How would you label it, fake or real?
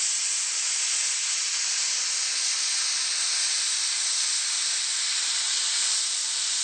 real